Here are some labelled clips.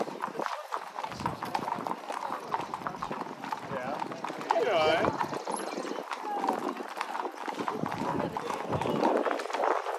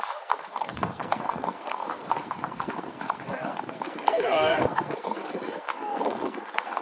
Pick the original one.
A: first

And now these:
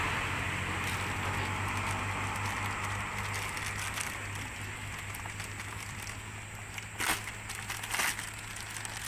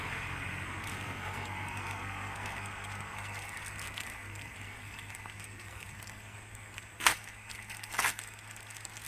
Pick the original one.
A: first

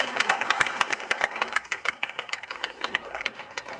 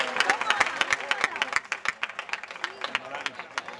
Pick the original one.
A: second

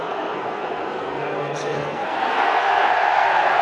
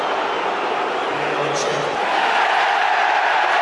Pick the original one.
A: second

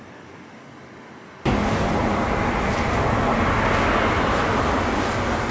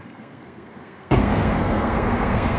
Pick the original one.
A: first